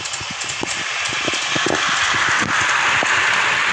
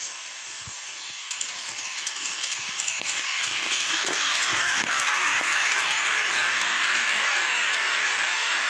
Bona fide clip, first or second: first